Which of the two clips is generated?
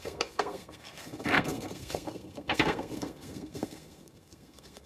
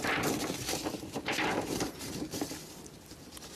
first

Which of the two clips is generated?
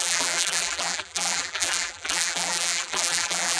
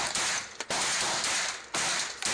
first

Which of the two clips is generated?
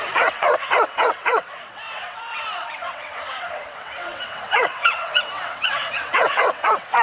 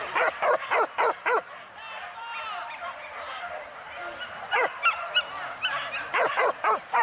first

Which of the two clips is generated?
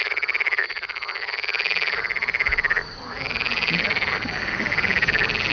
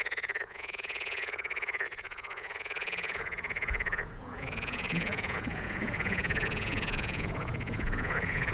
second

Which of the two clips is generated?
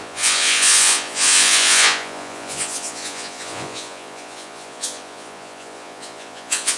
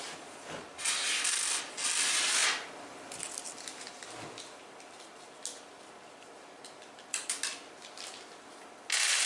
first